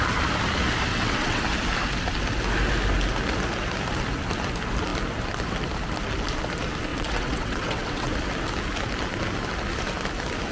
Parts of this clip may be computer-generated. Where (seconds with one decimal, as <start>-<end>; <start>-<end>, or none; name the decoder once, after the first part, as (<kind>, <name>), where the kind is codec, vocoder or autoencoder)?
0.9-1.4 (vocoder, WaveNeXt); 6.9-8.1